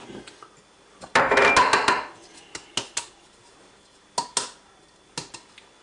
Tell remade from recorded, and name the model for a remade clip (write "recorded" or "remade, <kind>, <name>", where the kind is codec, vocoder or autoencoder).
recorded